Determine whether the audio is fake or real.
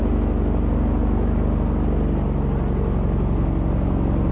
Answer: real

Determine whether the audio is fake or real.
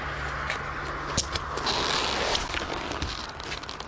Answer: real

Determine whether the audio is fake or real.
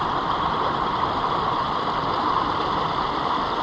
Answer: real